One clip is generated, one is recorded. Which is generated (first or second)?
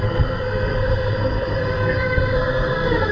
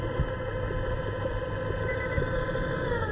first